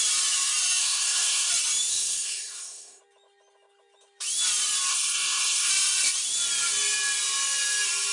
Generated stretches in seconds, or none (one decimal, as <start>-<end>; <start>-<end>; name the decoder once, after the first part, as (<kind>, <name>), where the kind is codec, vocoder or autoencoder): 0.8-1.5 (codec, SNAC); 1.9-3.0; 4.9-5.7